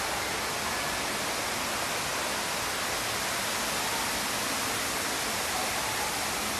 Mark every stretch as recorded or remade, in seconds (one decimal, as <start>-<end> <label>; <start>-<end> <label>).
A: 0.0-6.6 recorded